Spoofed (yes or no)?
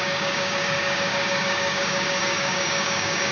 yes